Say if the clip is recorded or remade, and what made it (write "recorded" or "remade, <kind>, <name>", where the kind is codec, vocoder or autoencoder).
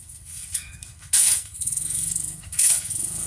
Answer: remade, codec, SNAC